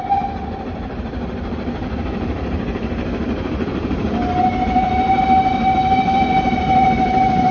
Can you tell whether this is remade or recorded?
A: remade